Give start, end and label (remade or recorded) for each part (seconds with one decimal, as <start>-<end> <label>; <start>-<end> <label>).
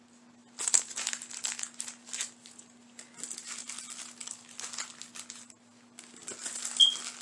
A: 0.0-7.2 recorded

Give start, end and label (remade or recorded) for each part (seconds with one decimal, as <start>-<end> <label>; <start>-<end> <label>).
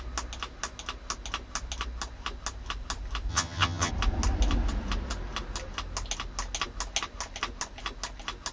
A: 0.0-3.3 recorded; 3.3-3.9 remade; 3.9-8.5 recorded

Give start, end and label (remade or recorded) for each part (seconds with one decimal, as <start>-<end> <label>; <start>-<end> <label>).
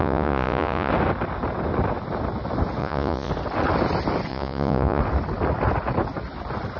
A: 0.0-0.9 remade; 0.9-2.8 recorded; 2.8-3.3 remade; 3.3-4.3 recorded; 4.3-5.0 remade; 5.0-6.8 recorded